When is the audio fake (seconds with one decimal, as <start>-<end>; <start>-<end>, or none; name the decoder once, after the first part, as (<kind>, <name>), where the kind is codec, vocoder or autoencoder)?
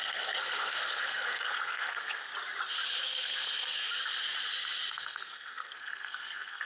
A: 0.0-2.3 (codec, SNAC); 3.0-3.8; 4.9-6.6